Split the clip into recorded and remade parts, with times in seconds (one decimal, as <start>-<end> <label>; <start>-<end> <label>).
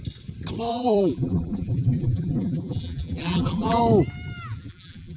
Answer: 0.0-0.7 recorded; 0.7-3.8 remade; 3.8-4.4 recorded; 4.4-5.2 remade